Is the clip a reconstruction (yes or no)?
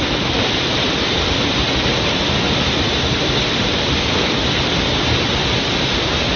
yes